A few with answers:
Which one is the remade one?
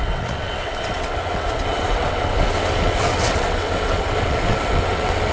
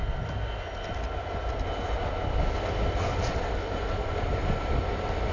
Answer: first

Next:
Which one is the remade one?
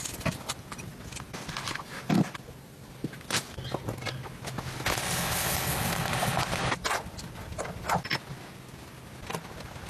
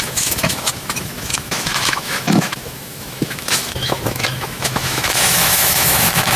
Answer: second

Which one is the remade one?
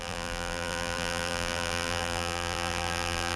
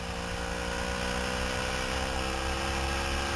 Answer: first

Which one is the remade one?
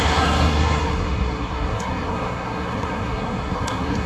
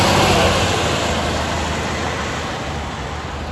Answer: first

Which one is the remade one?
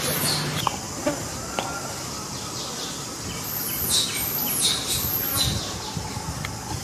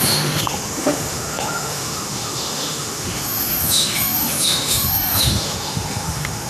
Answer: second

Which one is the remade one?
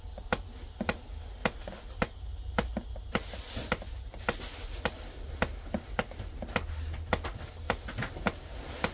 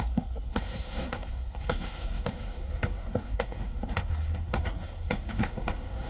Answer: second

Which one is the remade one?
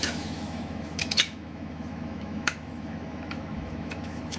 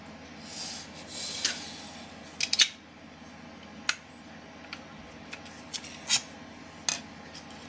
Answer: first